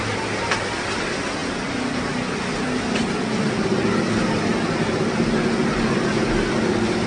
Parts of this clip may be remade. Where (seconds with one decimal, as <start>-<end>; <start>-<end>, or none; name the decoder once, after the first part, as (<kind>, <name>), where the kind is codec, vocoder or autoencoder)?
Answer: none